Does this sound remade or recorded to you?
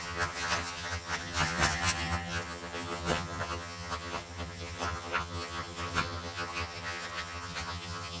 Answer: remade